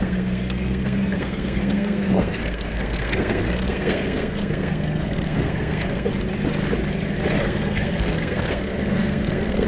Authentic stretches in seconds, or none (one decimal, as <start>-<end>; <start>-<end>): 6.1-7.4